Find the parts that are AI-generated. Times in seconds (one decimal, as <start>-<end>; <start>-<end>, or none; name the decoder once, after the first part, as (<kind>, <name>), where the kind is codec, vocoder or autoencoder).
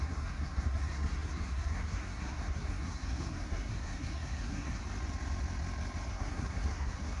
0.0-4.8 (codec, SNAC); 6.1-7.2